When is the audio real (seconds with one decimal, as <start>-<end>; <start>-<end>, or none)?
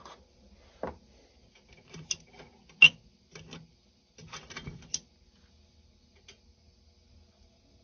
0.0-7.8